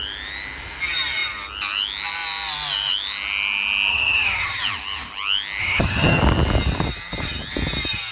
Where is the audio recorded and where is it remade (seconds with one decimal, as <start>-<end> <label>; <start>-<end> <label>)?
0.0-3.9 recorded; 3.9-4.6 remade; 4.6-5.6 recorded; 5.6-6.2 remade; 6.2-8.1 recorded